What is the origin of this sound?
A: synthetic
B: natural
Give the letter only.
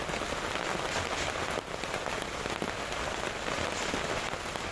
B